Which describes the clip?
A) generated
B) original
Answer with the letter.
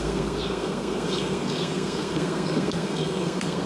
A